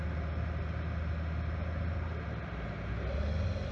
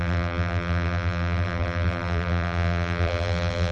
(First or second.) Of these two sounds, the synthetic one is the second